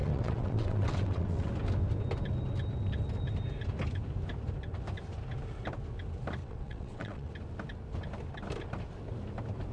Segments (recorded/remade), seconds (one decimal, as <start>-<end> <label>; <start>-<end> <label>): 0.0-1.5 remade; 1.5-6.4 recorded; 6.4-7.3 remade; 7.3-9.7 recorded